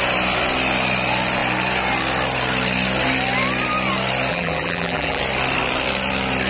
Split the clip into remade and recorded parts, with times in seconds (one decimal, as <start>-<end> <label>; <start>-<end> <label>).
0.0-4.3 recorded; 4.3-5.2 remade; 5.2-6.5 recorded